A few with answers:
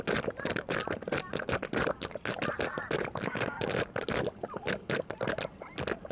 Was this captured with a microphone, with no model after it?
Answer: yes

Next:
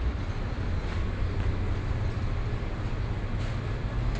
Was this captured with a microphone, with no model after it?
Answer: yes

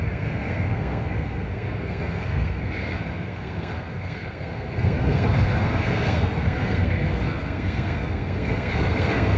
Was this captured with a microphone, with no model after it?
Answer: no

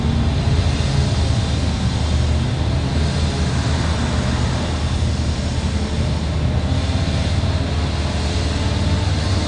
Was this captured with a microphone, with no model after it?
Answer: yes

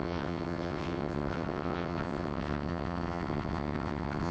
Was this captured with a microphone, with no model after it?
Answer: no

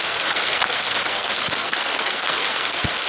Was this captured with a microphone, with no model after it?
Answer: no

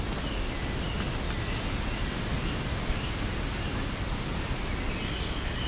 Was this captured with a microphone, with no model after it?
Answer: yes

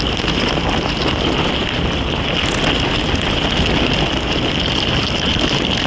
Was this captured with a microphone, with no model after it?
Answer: yes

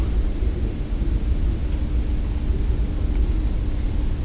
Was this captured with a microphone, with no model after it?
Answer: yes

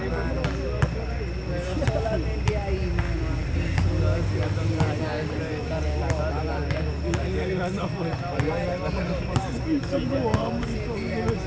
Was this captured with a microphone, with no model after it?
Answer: yes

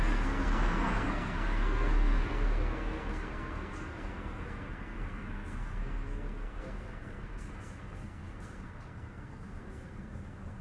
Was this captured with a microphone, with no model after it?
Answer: no